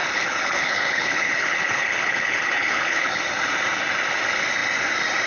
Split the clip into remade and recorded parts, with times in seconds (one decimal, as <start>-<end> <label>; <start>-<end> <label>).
0.0-3.2 remade; 3.2-5.3 recorded